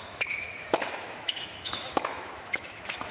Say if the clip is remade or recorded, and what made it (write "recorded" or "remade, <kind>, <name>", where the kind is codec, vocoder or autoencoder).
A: remade, autoencoder, DAC-VAE